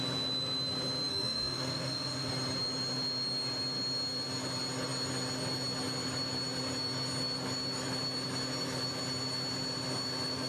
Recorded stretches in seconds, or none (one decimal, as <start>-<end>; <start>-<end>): 0.0-1.1; 2.3-10.5